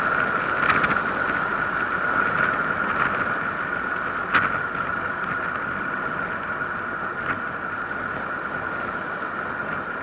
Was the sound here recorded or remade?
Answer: recorded